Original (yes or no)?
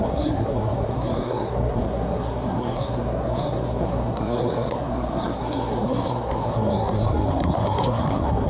no